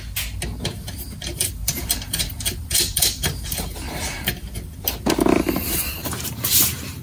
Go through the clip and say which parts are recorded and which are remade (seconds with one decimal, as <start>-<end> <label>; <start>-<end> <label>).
0.0-1.3 recorded; 1.3-4.3 remade; 4.3-6.0 recorded; 6.0-7.0 remade